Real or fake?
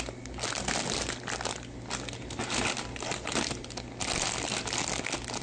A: real